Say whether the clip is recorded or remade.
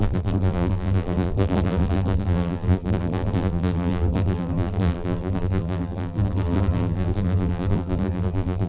remade